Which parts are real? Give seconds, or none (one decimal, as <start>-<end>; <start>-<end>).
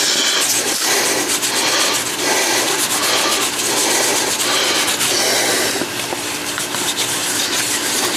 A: 0.0-8.2